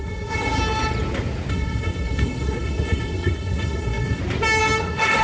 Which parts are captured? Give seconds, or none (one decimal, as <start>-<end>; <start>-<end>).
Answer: 0.6-1.5; 4.2-4.8